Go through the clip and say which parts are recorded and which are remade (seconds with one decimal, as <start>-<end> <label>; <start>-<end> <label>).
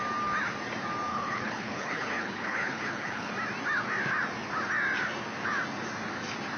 0.0-1.1 recorded; 1.1-3.3 remade; 3.3-6.6 recorded